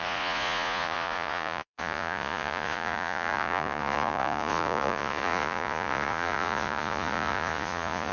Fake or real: fake